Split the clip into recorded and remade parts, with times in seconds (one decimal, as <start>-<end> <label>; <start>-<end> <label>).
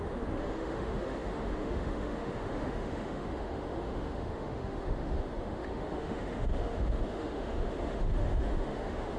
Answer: 0.0-9.2 remade